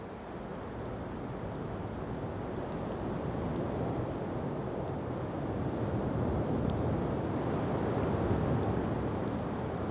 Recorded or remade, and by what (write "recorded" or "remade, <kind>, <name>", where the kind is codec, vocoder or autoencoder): recorded